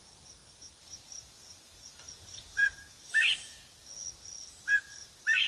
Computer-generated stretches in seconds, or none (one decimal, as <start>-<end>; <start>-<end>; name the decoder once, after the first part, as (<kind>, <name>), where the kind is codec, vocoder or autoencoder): 0.4-3.1 (vocoder, BigVGAN v2)